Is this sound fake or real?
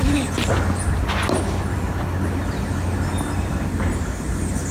real